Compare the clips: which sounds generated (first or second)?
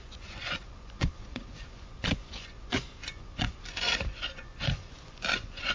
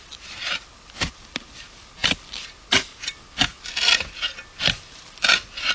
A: first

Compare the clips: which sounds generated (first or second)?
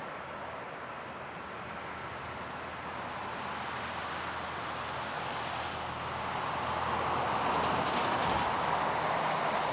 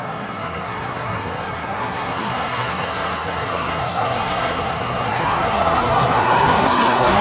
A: second